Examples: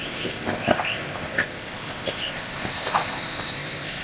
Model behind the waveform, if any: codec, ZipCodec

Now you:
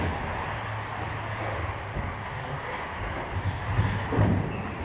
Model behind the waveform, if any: none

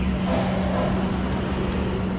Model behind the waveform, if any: none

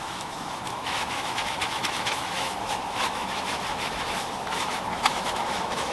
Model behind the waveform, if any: autoencoder, DAC-VAE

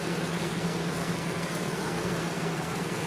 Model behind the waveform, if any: codec, SNAC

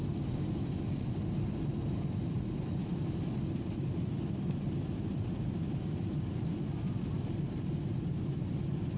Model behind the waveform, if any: none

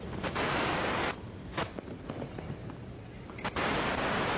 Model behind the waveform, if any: none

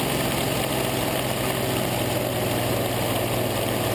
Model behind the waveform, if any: none